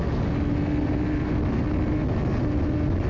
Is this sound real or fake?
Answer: real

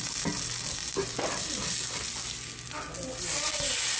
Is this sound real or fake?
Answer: real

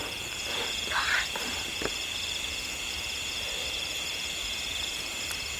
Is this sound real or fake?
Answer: real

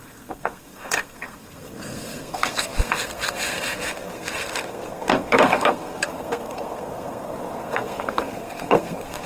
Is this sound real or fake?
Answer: fake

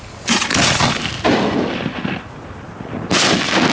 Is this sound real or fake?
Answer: real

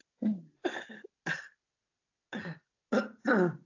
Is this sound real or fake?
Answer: real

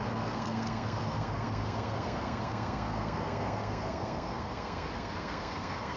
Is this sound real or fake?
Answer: fake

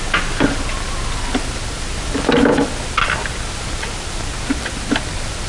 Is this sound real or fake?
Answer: real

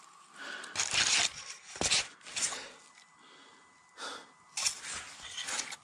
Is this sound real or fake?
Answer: real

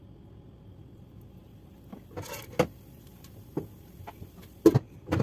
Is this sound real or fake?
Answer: real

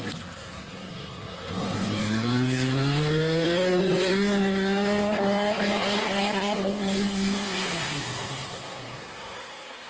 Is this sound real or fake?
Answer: fake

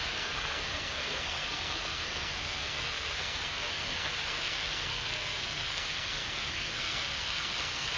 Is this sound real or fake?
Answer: fake